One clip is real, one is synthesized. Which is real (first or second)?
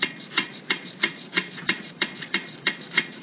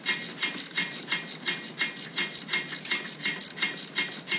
second